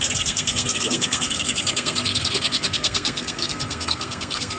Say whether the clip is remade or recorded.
remade